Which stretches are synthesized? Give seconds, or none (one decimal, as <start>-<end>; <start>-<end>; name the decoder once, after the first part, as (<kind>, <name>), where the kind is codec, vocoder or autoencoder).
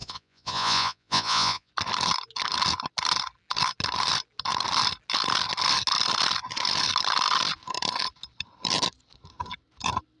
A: 0.0-1.7 (vocoder, Vocos)